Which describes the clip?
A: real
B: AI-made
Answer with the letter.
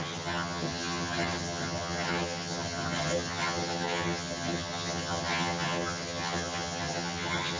B